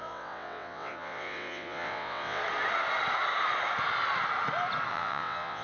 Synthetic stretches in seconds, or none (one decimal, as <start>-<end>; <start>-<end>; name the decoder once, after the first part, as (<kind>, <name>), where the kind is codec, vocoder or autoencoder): 0.0-2.4 (vocoder, WaveNeXt); 4.9-5.6